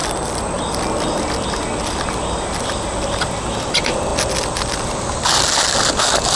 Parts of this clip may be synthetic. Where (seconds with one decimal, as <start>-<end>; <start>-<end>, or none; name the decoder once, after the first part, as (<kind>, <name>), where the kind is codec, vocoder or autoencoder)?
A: none